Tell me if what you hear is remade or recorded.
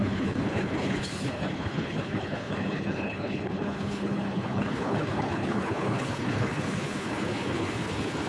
remade